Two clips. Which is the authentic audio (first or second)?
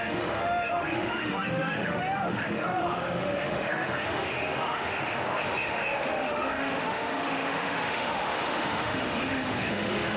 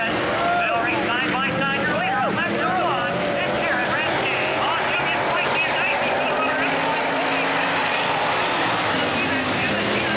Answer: second